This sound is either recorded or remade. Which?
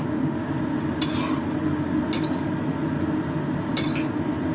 recorded